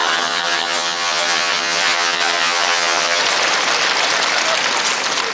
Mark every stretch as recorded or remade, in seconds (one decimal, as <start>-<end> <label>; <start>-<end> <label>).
0.0-3.2 remade; 3.2-5.3 recorded